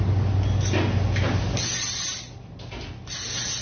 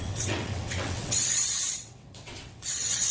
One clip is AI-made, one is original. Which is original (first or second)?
first